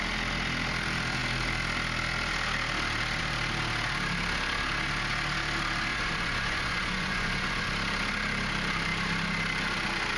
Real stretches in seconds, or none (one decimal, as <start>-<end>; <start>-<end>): 0.0-5.9; 7.7-10.2